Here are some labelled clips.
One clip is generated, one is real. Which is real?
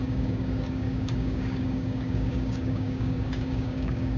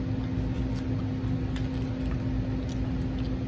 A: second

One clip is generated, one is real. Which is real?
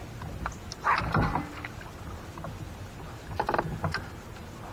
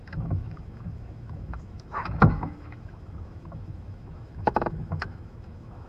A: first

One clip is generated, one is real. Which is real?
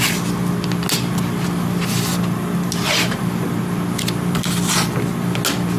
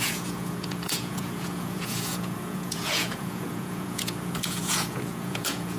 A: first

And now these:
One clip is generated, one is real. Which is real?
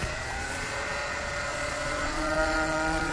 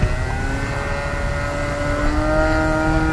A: second